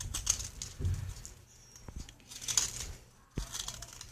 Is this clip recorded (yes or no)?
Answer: yes